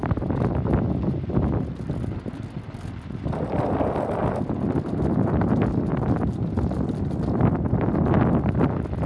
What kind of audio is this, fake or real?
real